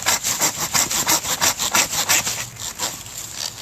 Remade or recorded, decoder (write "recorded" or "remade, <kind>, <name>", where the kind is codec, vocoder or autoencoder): recorded